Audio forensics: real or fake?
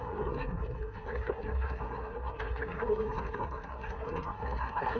fake